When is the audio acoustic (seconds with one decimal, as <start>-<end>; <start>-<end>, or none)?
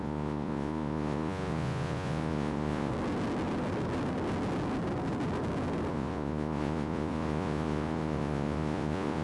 2.9-5.9